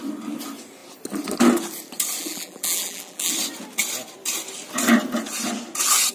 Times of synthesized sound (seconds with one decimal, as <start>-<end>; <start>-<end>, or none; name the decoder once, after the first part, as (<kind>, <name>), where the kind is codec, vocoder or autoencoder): 2.2-3.3 (vocoder, BigVGAN v2)